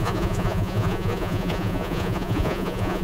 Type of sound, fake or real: fake